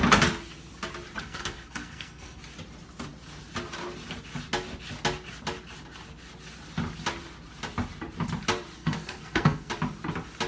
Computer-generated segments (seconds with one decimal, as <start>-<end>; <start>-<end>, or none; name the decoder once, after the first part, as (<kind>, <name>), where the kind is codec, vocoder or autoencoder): 1.2-2.4 (codec, SNAC); 8.8-9.7